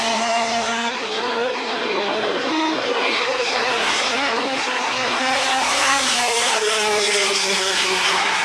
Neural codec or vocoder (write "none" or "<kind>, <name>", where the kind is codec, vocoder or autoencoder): codec, SNAC